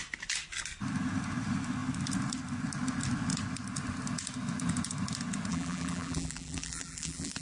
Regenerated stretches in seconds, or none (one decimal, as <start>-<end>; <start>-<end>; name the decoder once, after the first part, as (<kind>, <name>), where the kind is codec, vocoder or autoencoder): 5.5-7.4 (vocoder, BigVGAN v2)